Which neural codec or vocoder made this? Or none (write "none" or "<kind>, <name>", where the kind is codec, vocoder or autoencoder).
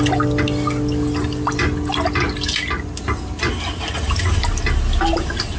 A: none